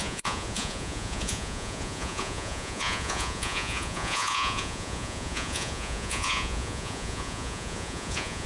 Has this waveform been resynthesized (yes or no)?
yes